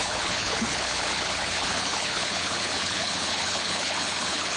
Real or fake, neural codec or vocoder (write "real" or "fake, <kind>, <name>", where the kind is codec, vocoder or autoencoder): fake, codec, HILCodec